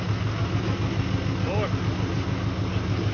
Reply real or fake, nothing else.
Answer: real